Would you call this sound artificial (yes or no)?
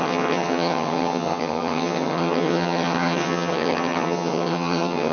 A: yes